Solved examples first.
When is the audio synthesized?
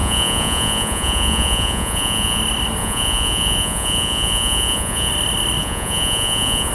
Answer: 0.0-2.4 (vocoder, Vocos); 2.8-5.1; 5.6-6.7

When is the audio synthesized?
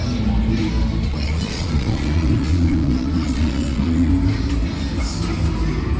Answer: 1.1-4.1 (vocoder, Vocos)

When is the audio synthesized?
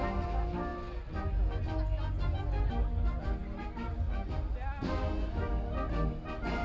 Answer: none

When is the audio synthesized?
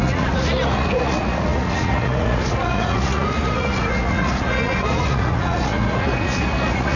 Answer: 0.0-7.0 (vocoder, Vocos)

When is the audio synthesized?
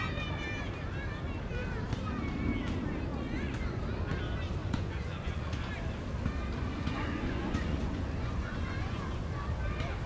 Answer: 3.1-3.8 (vocoder, Vocos); 4.6-5.7; 6.7-9.4